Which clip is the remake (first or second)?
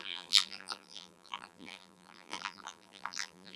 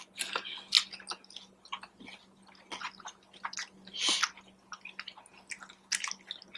first